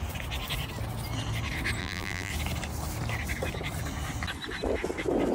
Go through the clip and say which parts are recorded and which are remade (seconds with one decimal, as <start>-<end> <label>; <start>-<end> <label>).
0.0-1.8 recorded; 1.8-2.3 remade; 2.3-5.3 recorded